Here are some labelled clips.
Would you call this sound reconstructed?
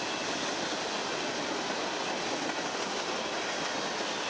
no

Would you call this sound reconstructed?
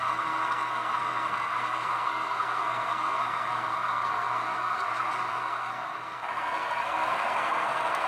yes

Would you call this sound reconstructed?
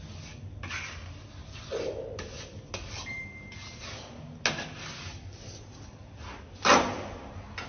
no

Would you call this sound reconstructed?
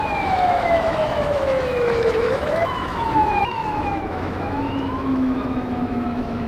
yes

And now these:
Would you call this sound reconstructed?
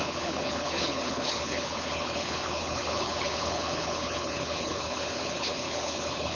yes